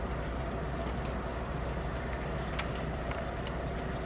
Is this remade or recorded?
recorded